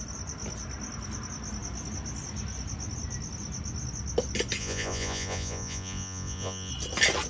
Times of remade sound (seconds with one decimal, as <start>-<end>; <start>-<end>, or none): 4.6-6.7